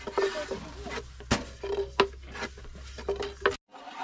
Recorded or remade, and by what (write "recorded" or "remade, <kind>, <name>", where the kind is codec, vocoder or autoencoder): recorded